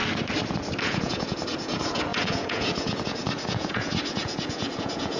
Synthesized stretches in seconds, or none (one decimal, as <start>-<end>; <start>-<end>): 0.8-5.2